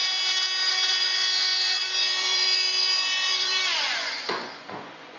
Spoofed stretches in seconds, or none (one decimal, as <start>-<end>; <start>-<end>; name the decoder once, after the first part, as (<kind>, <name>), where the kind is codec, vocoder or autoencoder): 0.7-5.2 (vocoder, Vocos)